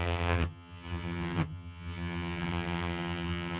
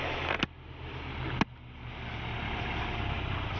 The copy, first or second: first